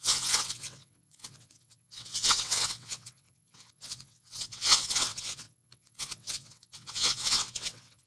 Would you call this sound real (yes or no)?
no